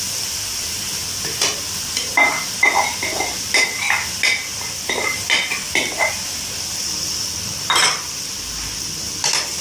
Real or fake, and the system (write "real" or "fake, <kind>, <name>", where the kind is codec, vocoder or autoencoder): real